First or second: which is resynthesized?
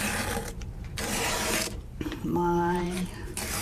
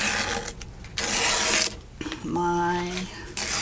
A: first